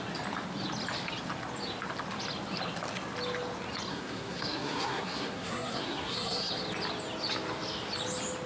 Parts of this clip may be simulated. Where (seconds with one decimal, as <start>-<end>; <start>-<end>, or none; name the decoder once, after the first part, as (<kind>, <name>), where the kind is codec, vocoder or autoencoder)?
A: 3.9-6.5 (codec, SNAC)